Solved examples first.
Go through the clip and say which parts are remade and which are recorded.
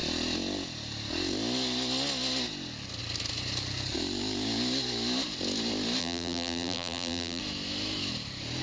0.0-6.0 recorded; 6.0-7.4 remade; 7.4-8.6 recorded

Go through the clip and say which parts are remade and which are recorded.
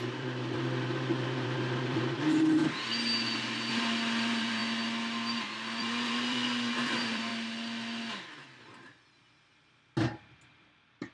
0.0-2.6 remade; 2.6-3.7 recorded; 3.7-4.6 remade; 4.6-5.8 recorded; 5.8-7.3 remade; 7.3-10.6 recorded; 10.6-11.1 remade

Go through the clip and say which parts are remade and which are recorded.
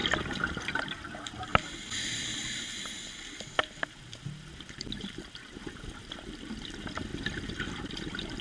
0.0-8.4 recorded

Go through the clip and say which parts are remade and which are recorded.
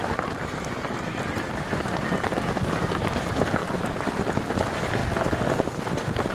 0.0-6.3 recorded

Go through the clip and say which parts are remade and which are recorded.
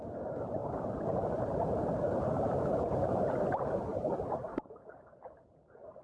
0.0-0.6 recorded; 0.6-3.2 remade; 3.2-3.9 recorded; 3.9-4.9 remade; 4.9-6.0 recorded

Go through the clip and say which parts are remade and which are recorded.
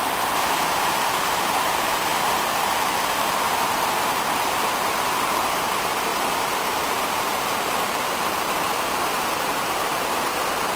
0.0-10.8 remade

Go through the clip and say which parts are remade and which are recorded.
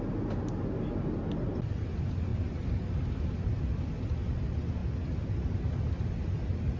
0.0-2.3 recorded; 2.3-3.8 remade; 3.8-4.8 recorded; 4.8-5.6 remade; 5.6-6.8 recorded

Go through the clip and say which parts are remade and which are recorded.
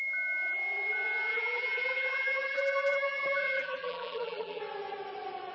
0.0-1.3 recorded; 1.3-4.6 remade; 4.6-5.5 recorded